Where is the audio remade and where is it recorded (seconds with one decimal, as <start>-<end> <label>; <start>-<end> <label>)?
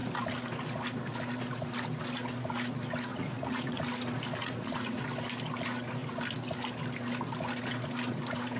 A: 0.0-3.1 recorded; 3.1-3.8 remade; 3.8-4.4 recorded; 4.4-5.0 remade; 5.0-8.6 recorded